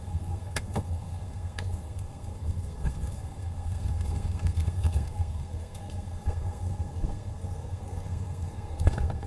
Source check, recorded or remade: remade